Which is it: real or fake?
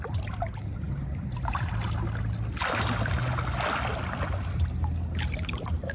real